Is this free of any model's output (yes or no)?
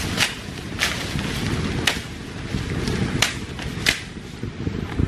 yes